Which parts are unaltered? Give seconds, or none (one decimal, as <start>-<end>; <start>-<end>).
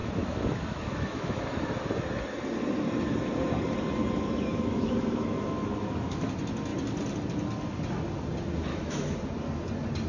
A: 1.4-4.5; 6.3-8.7; 9.2-10.1